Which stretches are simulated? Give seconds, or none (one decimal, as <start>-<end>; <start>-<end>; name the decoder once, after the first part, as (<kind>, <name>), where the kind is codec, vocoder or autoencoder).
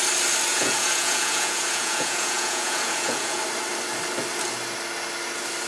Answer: 0.5-3.4 (vocoder, Vocos)